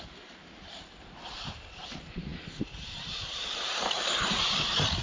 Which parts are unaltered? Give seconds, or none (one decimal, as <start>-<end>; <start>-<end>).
0.0-0.7; 1.6-2.3